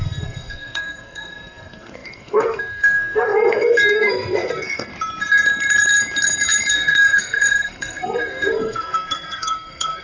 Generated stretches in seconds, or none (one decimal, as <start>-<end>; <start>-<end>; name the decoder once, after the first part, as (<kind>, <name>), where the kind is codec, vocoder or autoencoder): 0.0-4.9 (codec, SNAC); 6.7-10.0